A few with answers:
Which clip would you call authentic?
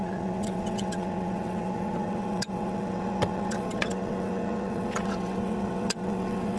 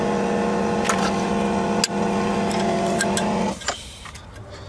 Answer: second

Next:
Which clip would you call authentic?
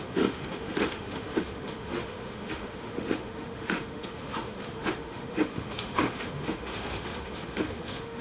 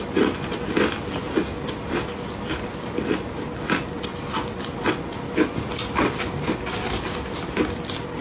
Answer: second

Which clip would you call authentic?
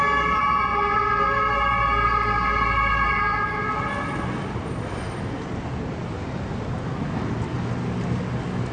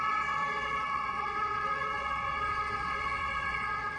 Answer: first